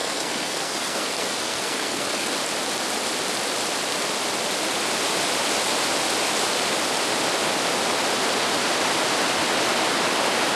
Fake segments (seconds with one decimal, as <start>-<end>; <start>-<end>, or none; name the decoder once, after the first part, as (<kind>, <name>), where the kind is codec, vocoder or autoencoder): 0.0-2.3 (codec, SNAC)